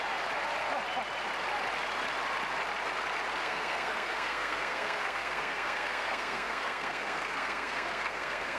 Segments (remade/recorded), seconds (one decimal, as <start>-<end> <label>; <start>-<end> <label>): 0.0-3.4 recorded; 3.4-8.6 remade